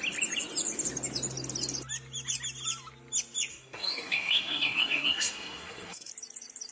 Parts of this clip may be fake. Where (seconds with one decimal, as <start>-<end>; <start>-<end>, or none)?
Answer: 3.5-6.1